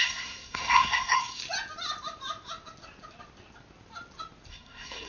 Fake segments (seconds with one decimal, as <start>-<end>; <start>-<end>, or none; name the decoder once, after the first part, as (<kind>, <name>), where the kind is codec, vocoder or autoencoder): 0.0-1.4 (codec, SNAC); 4.5-5.1